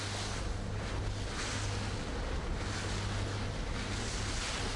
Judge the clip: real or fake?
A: real